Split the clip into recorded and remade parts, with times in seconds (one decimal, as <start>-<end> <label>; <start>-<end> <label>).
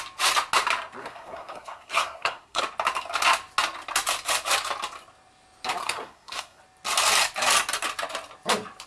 0.0-1.0 recorded; 1.0-2.6 remade; 2.6-5.8 recorded; 5.8-6.6 remade; 6.6-8.9 recorded